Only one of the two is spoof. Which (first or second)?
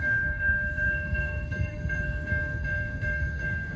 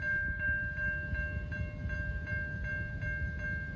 first